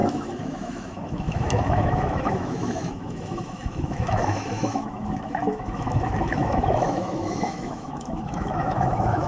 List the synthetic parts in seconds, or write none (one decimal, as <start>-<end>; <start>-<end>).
0.0-9.3